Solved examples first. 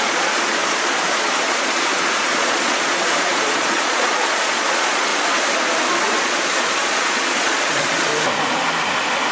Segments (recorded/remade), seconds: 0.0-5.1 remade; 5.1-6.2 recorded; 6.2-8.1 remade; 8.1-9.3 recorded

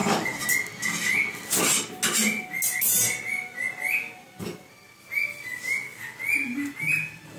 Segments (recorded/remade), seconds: 0.0-7.4 recorded

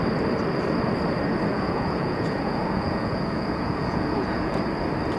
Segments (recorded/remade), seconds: 0.0-1.5 recorded; 1.5-4.6 remade; 4.6-5.2 recorded

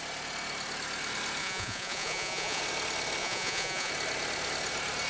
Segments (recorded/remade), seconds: 0.0-1.4 recorded; 1.4-2.6 remade; 2.6-3.2 recorded; 3.2-3.9 remade; 3.9-5.1 recorded

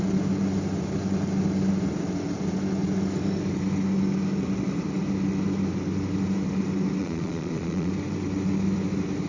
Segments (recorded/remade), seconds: 0.0-7.0 recorded; 7.0-7.9 remade; 7.9-9.3 recorded

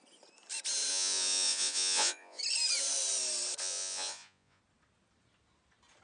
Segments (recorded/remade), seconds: 0.0-0.9 recorded; 0.9-2.4 remade; 2.4-3.6 recorded; 3.6-4.6 remade; 4.6-6.0 recorded